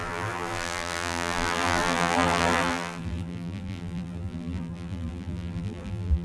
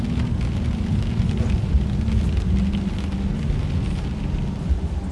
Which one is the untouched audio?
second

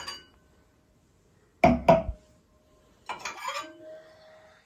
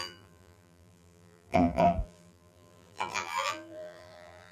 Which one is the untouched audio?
first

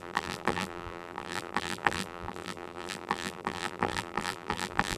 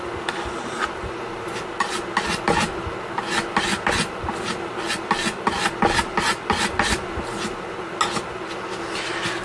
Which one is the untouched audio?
second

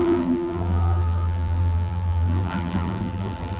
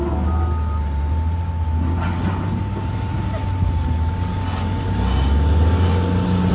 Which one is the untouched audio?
second